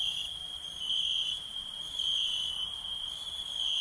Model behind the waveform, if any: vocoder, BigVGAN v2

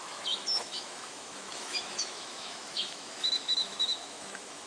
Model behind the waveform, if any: autoencoder, DAC-VAE